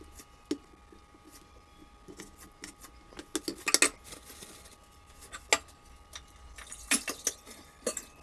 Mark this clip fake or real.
real